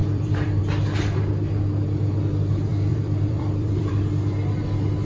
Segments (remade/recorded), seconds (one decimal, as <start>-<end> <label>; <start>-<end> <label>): 0.0-0.6 remade; 0.6-2.7 recorded; 2.7-4.0 remade; 4.0-5.0 recorded